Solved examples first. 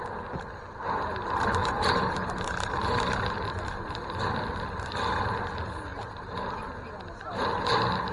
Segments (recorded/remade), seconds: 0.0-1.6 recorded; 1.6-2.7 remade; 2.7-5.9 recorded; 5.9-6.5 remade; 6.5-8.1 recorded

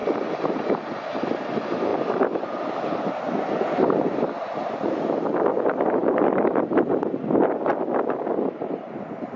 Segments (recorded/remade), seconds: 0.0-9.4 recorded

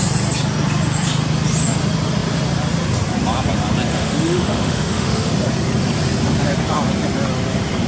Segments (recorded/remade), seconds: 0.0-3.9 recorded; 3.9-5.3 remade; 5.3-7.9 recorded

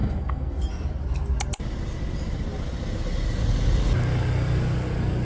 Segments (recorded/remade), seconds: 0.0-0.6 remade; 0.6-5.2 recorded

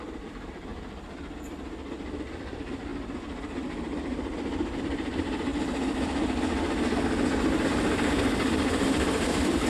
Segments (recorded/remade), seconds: 0.0-0.7 remade; 0.7-2.5 recorded; 2.5-2.9 remade; 2.9-4.8 recorded; 4.8-5.5 remade; 5.5-7.7 recorded; 7.7-9.7 remade

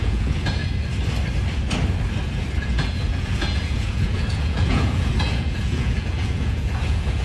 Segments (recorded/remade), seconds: 0.0-0.6 remade; 0.6-2.6 recorded; 2.6-7.2 remade

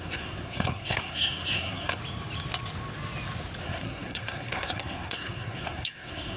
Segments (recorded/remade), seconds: 0.0-2.0 remade; 2.0-3.6 recorded; 3.6-6.4 remade

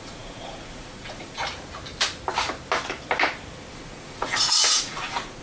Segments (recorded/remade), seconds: 0.0-1.4 remade; 1.4-3.7 recorded; 3.7-5.4 remade